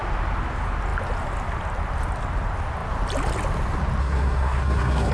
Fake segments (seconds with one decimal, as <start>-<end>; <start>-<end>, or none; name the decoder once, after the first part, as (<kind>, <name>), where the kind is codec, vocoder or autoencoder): 4.0-5.1 (codec, SNAC)